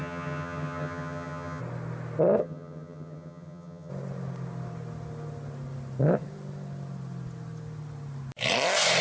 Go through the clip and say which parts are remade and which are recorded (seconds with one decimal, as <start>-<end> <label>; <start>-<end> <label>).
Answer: 0.0-1.6 remade; 1.6-2.4 recorded; 2.4-3.9 remade; 3.9-9.0 recorded